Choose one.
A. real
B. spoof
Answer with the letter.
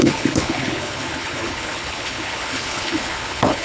B